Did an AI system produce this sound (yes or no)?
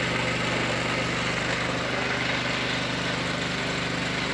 no